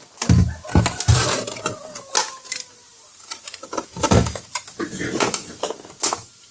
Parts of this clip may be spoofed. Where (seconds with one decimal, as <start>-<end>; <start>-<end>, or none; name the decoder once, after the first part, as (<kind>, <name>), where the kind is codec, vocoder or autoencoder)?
1.1-2.1 (vocoder, BigVGAN v2); 2.9-4.8